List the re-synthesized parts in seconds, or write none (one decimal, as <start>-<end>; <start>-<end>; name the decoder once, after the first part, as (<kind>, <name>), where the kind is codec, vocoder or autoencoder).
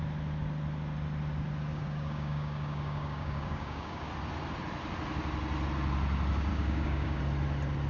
1.7-4.1 (codec, DAC); 6.5-7.2